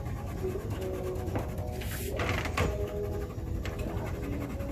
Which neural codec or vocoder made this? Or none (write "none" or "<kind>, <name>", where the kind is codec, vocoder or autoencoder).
none